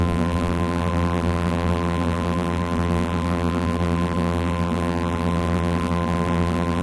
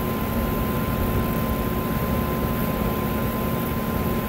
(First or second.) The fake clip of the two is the first